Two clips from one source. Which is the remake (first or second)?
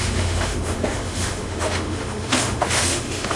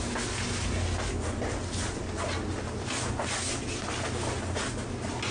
first